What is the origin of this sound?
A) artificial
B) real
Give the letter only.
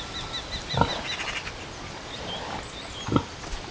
B